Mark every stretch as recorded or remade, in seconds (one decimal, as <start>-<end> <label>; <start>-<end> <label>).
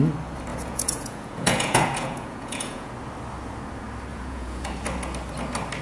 0.0-0.5 recorded; 0.5-2.9 remade; 2.9-4.1 recorded; 4.1-4.7 remade; 4.7-5.8 recorded